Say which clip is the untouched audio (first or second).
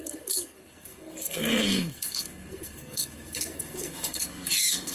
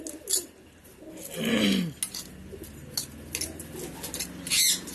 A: second